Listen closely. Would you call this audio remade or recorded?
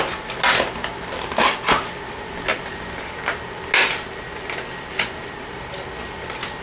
recorded